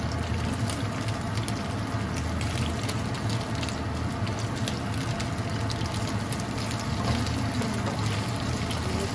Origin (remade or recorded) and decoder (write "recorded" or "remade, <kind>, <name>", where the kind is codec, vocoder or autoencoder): recorded